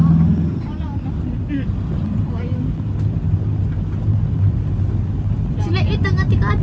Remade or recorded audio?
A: recorded